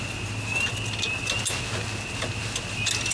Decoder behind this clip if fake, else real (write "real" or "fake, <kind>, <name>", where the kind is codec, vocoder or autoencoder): real